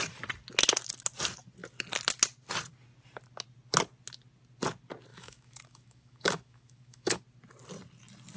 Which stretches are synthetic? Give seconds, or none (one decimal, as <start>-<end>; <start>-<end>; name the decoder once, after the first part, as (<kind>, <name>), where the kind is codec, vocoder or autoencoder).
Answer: 5.1-7.2 (autoencoder, DAC-VAE)